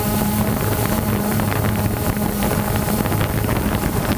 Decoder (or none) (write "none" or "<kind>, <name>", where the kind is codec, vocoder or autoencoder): vocoder, BigVGAN v2